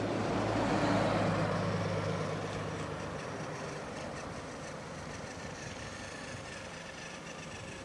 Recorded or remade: recorded